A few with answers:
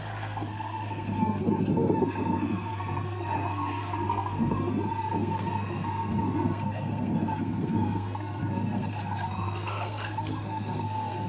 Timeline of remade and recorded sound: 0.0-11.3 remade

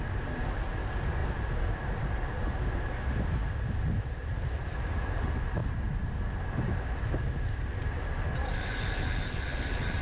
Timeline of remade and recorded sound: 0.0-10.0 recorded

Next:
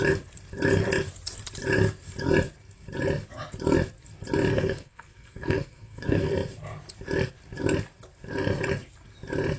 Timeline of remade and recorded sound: 0.0-4.5 recorded; 4.5-6.3 remade; 6.3-9.6 recorded